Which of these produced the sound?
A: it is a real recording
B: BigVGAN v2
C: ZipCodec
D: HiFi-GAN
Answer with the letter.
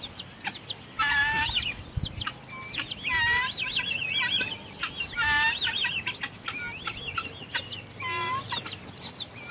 A